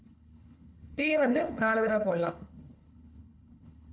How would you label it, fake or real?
fake